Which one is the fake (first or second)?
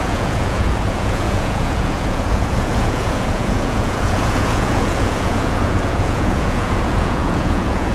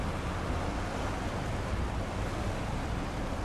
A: first